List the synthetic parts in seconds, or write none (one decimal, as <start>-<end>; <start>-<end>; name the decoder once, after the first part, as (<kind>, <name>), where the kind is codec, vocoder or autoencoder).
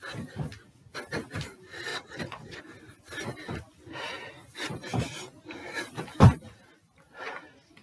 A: 1.9-2.6 (vocoder, WaveNeXt)